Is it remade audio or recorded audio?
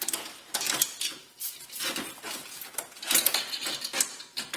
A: recorded